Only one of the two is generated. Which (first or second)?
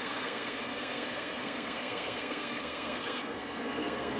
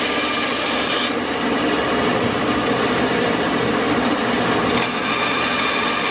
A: first